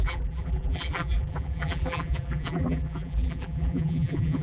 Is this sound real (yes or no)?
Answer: no